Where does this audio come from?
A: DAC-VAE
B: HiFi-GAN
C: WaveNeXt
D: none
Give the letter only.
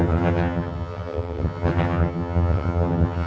B